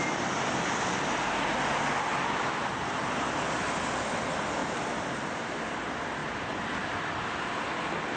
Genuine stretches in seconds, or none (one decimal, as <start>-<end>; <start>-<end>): 0.0-4.6; 5.6-6.2; 6.7-8.2